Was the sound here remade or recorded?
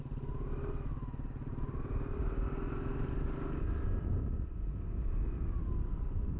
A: recorded